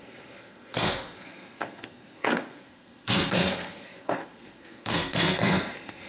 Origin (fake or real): fake